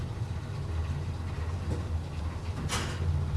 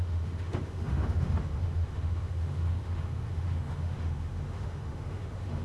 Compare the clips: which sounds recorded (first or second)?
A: first